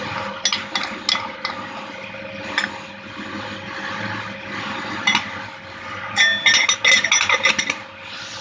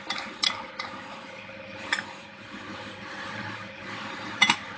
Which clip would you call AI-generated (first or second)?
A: second